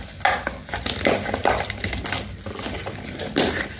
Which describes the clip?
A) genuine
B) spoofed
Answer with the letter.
A